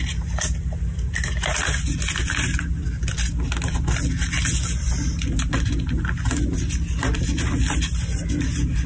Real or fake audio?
real